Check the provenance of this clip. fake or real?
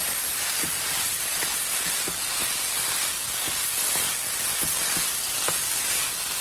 real